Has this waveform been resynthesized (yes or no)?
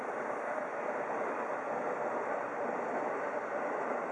no